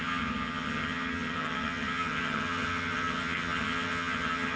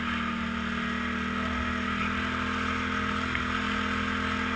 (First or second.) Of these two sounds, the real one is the second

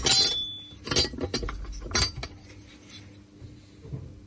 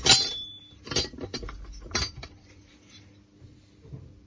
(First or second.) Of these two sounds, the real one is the first